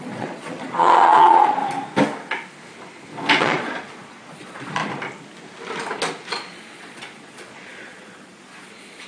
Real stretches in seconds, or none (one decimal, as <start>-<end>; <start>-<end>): 1.6-3.4; 4.8-6.3